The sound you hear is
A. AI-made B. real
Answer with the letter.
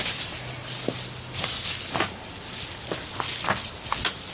B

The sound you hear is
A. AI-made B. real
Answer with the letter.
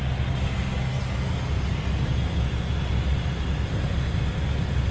B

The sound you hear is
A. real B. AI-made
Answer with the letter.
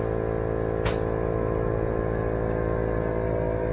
A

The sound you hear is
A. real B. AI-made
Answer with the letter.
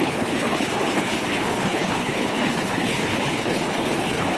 B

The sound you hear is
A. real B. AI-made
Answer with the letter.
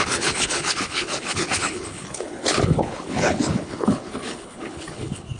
B